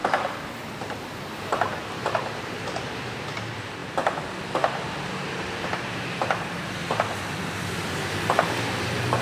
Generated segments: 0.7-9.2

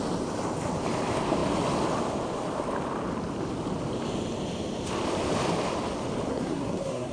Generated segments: 6.3-7.1

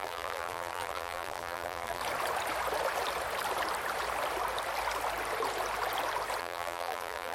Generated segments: 0.0-2.0; 6.4-7.3

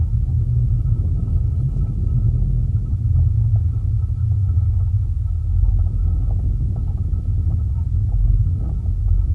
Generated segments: 1.3-1.8

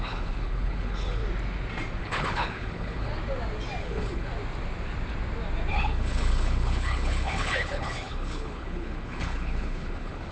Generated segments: 0.0-1.2; 2.0-3.1; 3.8-4.3; 5.7-10.3

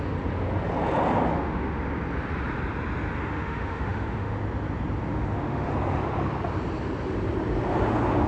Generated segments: 1.3-1.8; 3.2-4.4; 5.1-5.7

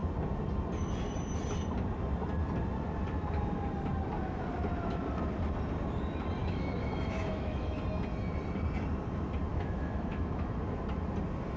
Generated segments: 6.4-7.8; 9.5-10.6